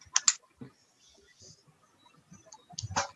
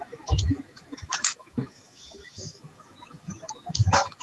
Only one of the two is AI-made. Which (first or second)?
second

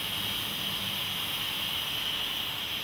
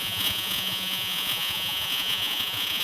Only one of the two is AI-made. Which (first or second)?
second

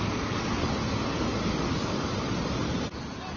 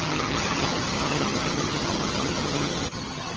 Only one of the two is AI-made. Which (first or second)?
second